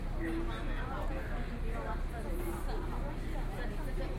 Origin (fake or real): real